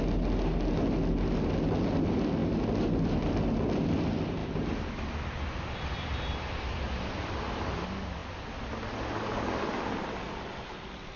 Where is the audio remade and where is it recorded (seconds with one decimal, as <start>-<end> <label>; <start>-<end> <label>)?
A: 0.0-11.2 recorded